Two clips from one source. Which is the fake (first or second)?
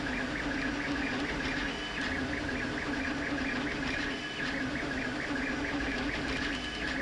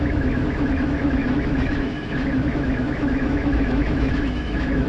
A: second